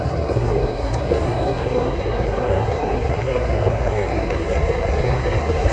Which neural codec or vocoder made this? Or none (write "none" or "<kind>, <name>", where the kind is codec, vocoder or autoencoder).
codec, SNAC